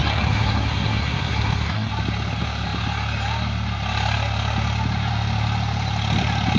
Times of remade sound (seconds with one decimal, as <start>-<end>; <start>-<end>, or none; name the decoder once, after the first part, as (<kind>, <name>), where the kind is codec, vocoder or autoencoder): 0.0-1.9 (codec, SNAC)

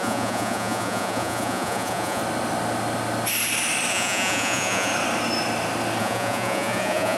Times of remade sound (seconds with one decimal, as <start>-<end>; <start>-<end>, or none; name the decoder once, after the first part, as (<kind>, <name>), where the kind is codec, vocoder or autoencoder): 0.0-2.2 (vocoder, Vocos); 3.9-4.9; 6.0-7.2

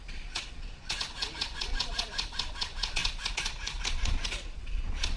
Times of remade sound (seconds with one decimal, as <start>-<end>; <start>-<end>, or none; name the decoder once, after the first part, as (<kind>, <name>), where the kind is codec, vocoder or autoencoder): 0.0-5.2 (vocoder, Vocos)

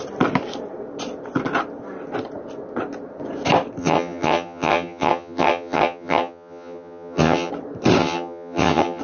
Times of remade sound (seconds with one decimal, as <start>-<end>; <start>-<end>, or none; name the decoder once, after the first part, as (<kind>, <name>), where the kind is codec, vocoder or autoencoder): 3.8-7.5 (vocoder, HiFi-GAN); 8.0-9.0

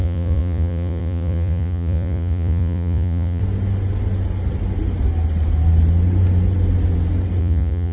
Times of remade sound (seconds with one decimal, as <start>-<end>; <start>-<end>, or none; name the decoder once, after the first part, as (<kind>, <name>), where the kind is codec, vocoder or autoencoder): 0.0-3.4 (vocoder, Vocos); 7.4-7.9